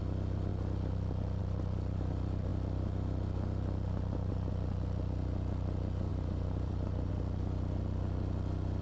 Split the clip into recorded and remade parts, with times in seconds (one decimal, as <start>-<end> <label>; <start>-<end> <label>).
0.0-6.1 recorded; 6.1-7.1 remade; 7.1-8.8 recorded